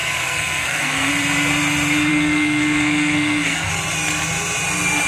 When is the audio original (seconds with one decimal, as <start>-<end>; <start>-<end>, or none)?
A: 1.1-2.1; 3.7-5.1